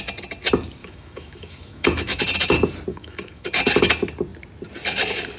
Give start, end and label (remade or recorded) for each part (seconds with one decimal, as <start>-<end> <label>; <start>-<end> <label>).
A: 0.0-0.8 recorded; 0.8-2.2 remade; 2.2-2.9 recorded; 2.9-3.5 remade; 3.5-5.4 recorded